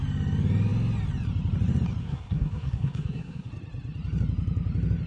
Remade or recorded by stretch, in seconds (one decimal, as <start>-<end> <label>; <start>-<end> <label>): 0.0-2.0 recorded; 2.0-3.5 remade; 3.5-5.1 recorded